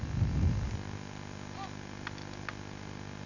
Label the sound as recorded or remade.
recorded